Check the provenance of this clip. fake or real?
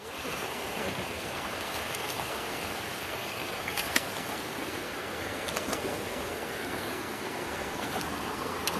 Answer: fake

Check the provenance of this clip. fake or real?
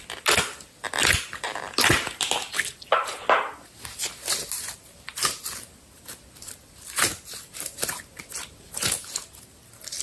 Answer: real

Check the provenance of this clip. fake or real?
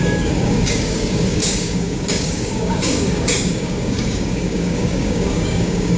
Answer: fake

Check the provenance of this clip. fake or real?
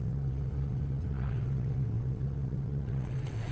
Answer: fake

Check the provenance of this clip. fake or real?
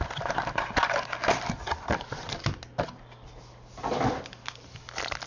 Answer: real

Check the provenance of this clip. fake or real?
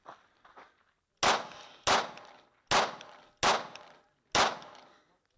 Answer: real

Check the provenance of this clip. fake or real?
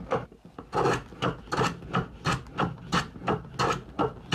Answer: real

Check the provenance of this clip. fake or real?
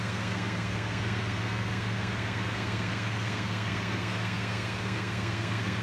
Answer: fake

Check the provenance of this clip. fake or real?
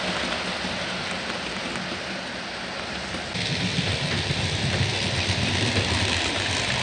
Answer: real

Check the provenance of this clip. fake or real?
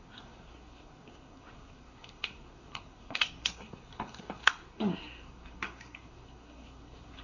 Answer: fake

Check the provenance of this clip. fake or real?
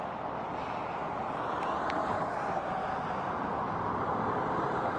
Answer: real